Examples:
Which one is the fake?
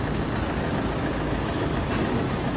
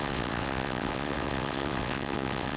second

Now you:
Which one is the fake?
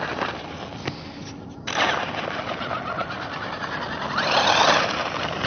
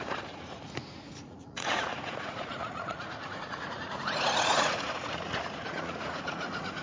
second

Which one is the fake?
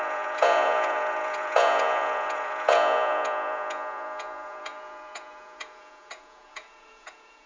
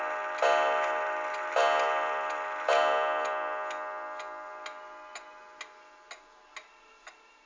first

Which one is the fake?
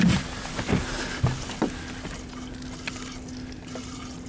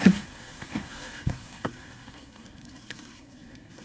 second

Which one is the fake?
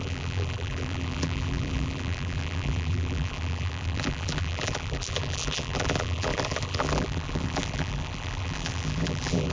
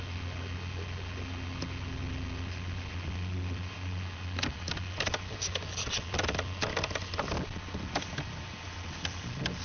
first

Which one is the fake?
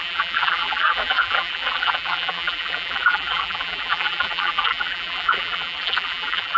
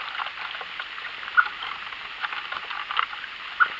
first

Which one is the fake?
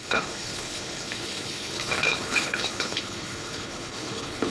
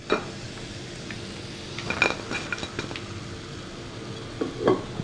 first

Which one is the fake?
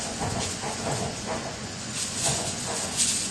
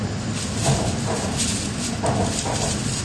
first